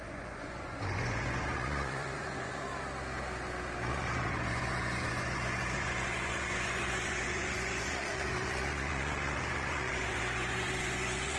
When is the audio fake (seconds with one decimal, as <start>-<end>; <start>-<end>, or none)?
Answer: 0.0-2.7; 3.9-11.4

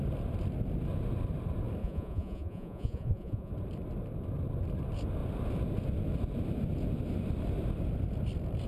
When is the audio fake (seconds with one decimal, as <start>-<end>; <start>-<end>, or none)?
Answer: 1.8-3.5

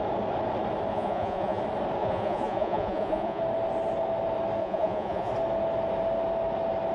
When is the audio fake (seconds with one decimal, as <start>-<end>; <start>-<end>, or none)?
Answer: 0.9-1.6; 2.0-3.4; 4.6-5.3

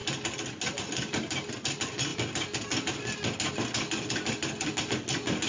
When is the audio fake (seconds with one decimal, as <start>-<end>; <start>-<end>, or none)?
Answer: none

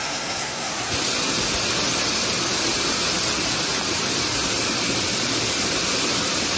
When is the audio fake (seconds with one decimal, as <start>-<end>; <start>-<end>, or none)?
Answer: 0.0-0.7

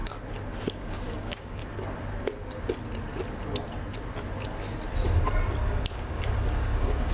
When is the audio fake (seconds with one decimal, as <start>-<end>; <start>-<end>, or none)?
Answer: 0.6-1.6; 5.9-7.1